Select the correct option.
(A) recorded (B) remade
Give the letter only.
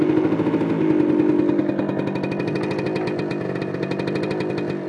A